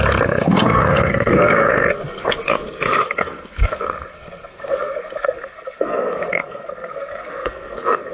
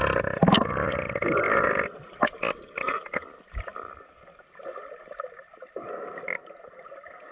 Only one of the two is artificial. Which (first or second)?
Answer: first